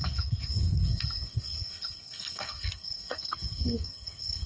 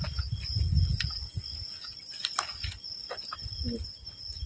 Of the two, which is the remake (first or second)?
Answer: first